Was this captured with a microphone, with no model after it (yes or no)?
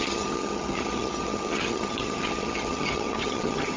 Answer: no